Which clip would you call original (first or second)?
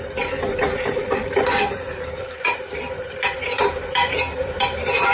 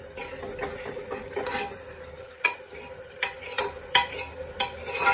second